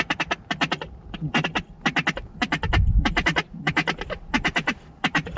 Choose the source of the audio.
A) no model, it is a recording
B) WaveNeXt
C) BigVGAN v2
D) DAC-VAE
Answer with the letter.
A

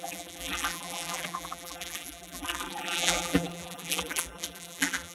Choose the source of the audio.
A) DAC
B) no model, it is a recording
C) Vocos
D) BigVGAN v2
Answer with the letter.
D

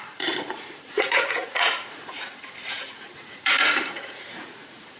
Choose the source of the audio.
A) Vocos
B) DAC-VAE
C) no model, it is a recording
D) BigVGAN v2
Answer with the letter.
A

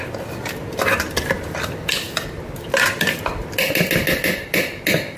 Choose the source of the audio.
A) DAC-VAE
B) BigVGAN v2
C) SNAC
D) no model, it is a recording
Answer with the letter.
D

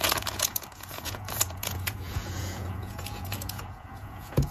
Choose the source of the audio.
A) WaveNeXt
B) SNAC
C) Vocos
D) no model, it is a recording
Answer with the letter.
C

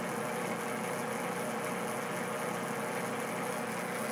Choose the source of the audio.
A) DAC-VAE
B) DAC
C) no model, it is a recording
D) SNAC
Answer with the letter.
C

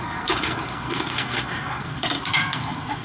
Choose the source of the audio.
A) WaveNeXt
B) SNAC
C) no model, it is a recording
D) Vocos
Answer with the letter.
B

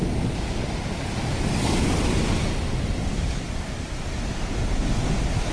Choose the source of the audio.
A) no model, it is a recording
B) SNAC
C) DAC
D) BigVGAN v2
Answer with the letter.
A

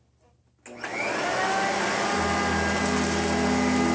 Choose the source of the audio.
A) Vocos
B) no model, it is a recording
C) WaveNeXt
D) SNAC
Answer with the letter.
B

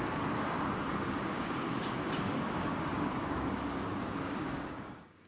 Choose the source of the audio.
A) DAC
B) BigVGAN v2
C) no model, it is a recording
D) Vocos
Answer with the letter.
A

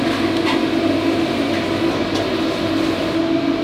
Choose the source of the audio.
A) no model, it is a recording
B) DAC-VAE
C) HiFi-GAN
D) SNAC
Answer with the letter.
A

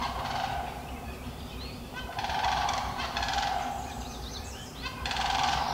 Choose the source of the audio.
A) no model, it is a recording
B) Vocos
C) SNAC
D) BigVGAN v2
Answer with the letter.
D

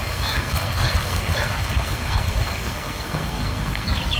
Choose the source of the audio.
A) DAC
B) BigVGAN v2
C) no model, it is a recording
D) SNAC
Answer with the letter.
D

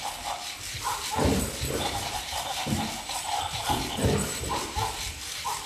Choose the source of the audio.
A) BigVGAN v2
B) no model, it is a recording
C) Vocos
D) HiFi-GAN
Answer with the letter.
A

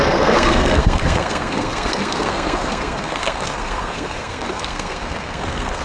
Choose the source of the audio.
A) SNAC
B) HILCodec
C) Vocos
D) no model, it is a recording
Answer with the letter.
A